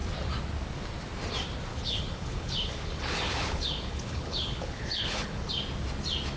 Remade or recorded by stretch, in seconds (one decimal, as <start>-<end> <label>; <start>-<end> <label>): 0.0-1.7 recorded; 1.7-5.5 remade; 5.5-6.4 recorded